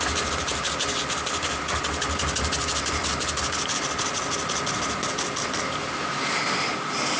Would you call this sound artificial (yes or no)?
no